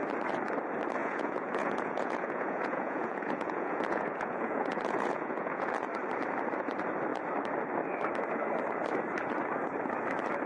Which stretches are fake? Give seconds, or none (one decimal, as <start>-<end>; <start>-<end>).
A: 1.0-5.7